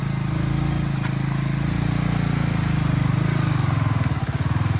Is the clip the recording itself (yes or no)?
yes